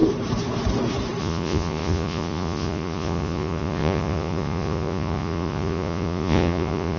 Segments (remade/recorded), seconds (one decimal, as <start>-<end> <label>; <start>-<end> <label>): 0.0-1.2 recorded; 1.2-7.0 remade

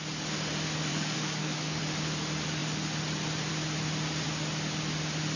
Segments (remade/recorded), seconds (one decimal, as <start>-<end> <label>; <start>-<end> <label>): 0.0-0.9 recorded; 0.9-1.8 remade; 1.8-5.4 recorded

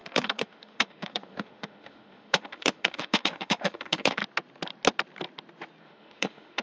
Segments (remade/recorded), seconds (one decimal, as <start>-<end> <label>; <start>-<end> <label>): 0.0-4.2 remade; 4.2-5.8 recorded; 5.8-6.6 remade